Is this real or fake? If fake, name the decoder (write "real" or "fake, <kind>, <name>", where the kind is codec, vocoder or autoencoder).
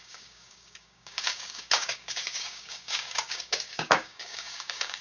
fake, codec, DAC